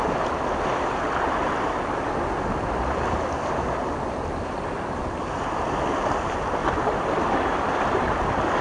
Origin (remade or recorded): recorded